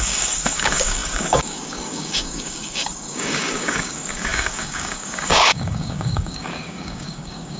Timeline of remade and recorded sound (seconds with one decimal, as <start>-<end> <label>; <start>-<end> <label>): 0.0-7.6 remade